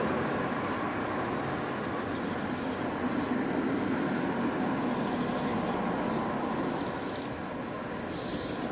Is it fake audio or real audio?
real